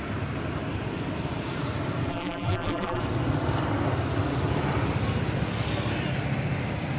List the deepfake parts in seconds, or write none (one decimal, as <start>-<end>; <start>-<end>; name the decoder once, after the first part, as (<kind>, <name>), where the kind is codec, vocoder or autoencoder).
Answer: 2.1-3.0 (vocoder, BigVGAN v2)